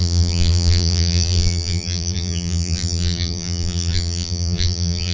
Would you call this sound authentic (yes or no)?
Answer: no